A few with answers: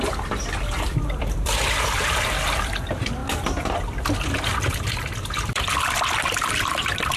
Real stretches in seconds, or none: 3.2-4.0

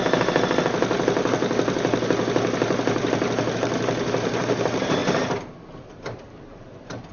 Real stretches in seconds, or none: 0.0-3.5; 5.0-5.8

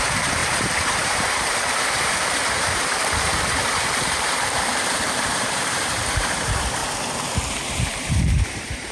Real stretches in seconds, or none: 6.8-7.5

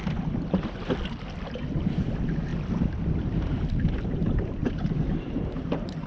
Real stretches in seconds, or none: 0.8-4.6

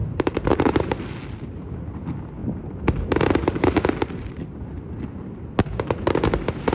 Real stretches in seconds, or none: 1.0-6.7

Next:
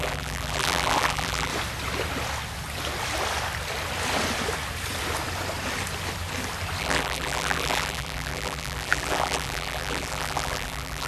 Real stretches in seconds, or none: 1.5-6.8

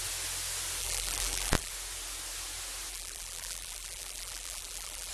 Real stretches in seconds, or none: 0.0-0.8; 1.7-2.9